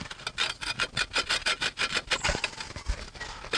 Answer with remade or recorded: recorded